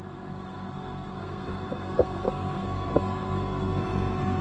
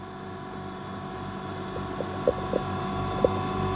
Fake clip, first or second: first